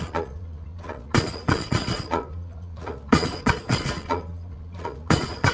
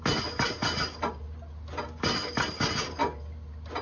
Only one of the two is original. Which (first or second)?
second